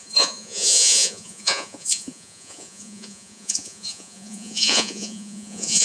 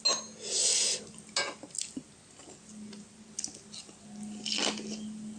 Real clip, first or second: second